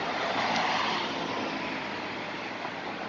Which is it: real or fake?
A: real